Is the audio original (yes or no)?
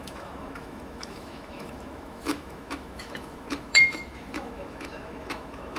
no